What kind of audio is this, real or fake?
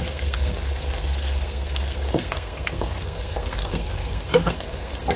fake